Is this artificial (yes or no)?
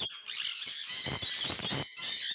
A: no